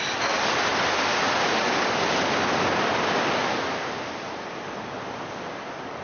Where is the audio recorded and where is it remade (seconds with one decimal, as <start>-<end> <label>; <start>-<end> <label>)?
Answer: 0.0-6.0 recorded